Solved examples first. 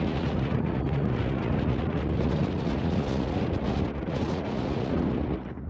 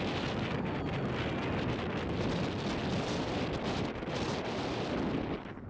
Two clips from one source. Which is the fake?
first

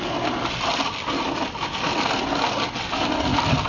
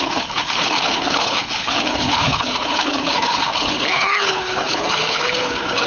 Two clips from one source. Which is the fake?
second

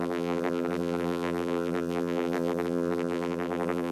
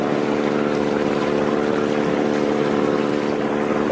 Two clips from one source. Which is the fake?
first